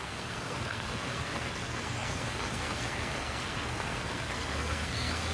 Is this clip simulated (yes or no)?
yes